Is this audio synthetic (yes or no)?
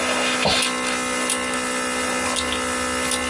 no